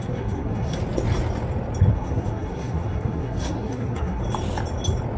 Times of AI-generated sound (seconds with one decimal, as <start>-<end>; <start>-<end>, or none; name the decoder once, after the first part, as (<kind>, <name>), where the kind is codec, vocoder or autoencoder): 0.0-0.8 (codec, SNAC); 1.9-4.2